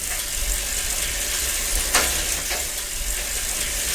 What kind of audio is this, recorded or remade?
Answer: recorded